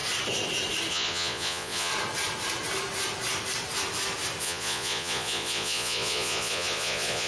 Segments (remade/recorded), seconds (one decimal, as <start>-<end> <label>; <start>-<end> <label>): 0.0-0.9 recorded; 0.9-1.9 remade; 1.9-4.4 recorded; 4.4-7.3 remade